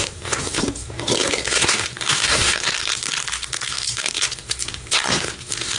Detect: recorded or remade remade